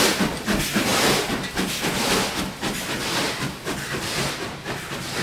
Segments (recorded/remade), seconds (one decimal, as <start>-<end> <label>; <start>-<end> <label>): 0.0-5.2 recorded

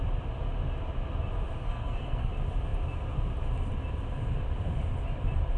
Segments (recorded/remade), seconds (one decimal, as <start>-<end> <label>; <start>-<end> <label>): 0.0-1.6 recorded; 1.6-2.3 remade; 2.3-5.6 recorded

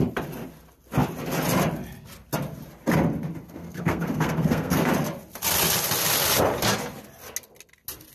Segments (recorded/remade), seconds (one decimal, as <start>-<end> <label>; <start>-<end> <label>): 0.0-3.4 recorded; 3.4-4.9 remade; 4.9-8.1 recorded

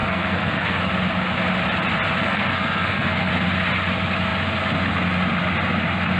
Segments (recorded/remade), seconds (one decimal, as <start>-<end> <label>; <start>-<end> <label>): 0.0-0.8 remade; 0.8-2.2 recorded; 2.2-3.3 remade; 3.3-6.2 recorded

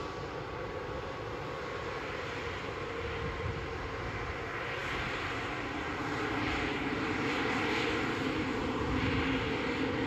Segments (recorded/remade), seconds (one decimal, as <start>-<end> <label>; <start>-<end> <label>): 0.0-10.1 recorded